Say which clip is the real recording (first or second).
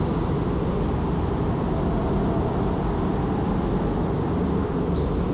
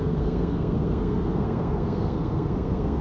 first